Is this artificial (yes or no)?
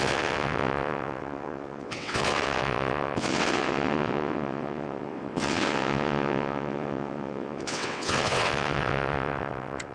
yes